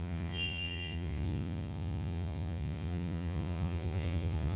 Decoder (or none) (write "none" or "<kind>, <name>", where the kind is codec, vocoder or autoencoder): vocoder, Vocos